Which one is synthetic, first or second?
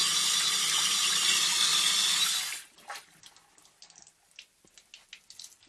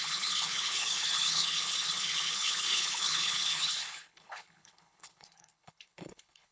second